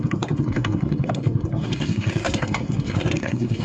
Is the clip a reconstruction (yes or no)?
yes